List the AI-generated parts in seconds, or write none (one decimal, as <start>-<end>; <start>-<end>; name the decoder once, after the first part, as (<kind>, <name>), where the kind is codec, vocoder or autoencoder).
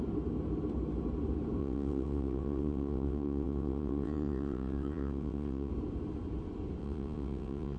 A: 1.6-5.7 (vocoder, WaveNeXt); 6.8-7.8